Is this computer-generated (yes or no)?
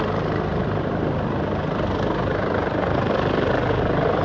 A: no